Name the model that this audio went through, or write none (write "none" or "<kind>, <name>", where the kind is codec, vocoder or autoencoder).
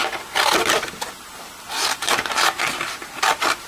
vocoder, BigVGAN v2